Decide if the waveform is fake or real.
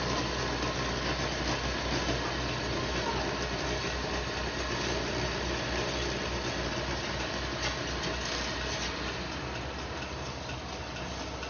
real